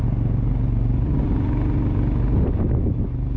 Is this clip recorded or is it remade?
recorded